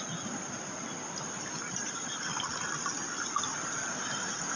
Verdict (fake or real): real